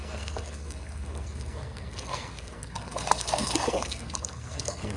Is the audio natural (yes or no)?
no